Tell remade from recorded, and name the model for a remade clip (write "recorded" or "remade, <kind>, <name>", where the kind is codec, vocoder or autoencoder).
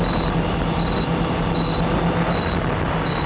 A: recorded